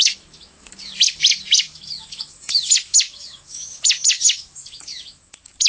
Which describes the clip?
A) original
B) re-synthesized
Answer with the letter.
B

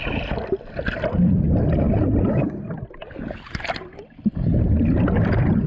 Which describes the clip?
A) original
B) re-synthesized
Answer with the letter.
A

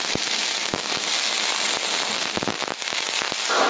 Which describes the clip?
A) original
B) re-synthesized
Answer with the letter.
A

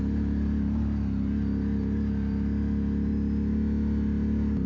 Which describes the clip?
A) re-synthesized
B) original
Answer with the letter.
B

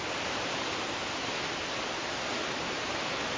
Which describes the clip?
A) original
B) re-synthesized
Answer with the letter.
A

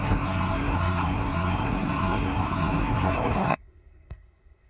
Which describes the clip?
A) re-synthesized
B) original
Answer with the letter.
A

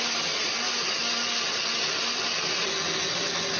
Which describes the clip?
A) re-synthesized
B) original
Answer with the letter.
B